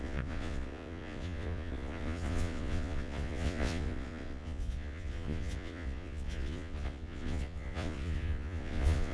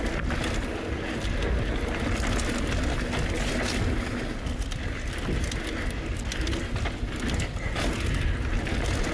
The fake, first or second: first